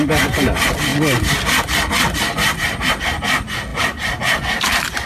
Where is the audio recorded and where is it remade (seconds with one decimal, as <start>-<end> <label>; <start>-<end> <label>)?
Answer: 0.0-5.1 recorded